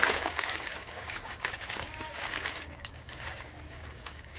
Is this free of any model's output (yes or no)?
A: no